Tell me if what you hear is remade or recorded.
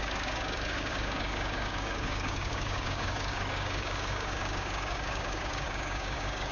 remade